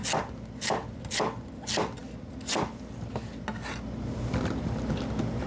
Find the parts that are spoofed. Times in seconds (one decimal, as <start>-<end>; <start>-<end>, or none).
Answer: none